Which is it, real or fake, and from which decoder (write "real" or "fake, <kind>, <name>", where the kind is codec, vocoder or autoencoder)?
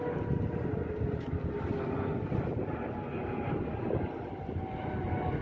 real